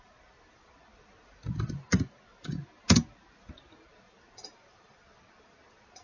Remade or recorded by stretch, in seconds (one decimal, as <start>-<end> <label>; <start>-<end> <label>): 0.0-6.0 recorded